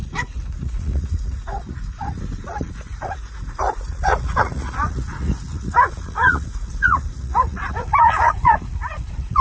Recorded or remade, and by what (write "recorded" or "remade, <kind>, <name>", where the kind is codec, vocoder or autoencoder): remade, vocoder, Vocos